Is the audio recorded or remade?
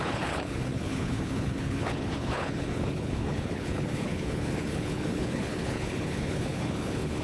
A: remade